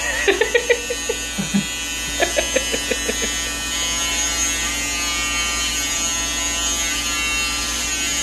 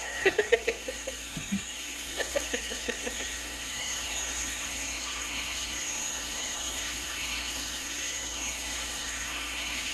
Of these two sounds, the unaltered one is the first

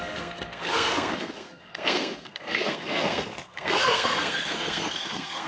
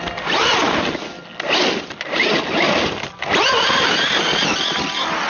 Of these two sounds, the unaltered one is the second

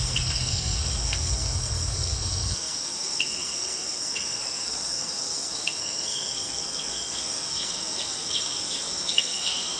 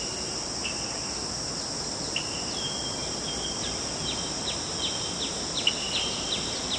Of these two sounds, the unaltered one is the second